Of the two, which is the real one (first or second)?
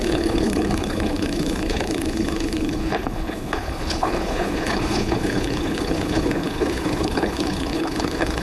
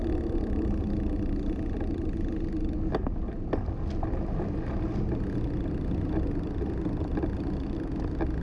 second